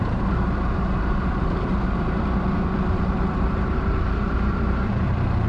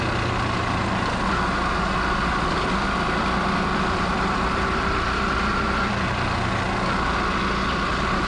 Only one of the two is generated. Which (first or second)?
first